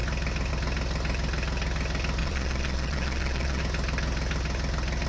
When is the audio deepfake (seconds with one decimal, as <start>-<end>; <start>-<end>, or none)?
2.2-3.6